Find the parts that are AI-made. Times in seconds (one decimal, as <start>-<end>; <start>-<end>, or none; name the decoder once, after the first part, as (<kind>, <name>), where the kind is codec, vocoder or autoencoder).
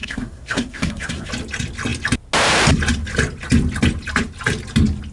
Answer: 0.0-1.3 (codec, SNAC)